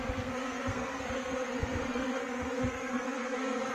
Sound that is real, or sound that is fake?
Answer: fake